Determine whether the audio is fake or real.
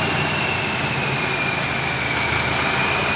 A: real